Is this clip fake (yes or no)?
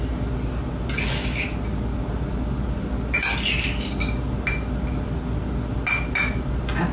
no